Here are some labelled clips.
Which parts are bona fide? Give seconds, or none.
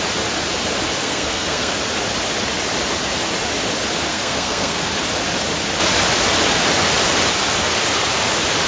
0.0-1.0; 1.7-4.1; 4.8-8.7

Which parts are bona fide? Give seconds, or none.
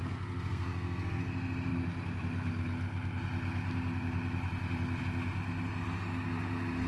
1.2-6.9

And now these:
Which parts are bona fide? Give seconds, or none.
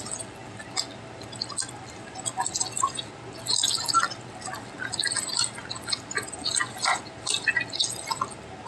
0.0-8.7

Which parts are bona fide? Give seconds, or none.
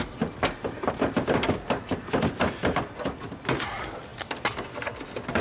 0.0-5.4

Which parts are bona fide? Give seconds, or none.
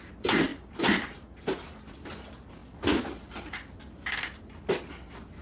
0.0-5.4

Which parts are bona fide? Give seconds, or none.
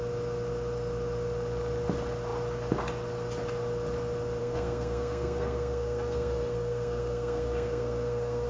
0.0-4.4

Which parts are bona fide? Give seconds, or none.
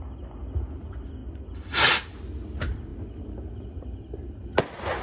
0.0-5.0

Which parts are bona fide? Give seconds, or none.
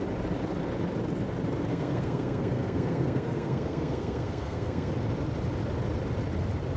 0.0-1.7; 4.9-6.8